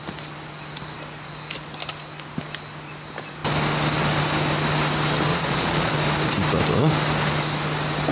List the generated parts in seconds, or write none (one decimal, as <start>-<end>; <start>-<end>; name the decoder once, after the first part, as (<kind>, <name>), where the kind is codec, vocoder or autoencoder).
5.3-5.9 (vocoder, Vocos)